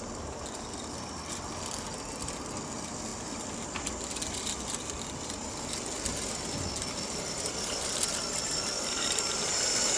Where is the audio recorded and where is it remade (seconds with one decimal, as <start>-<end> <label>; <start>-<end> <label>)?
0.0-10.0 recorded